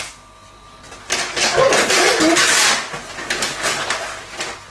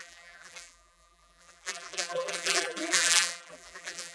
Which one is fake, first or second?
second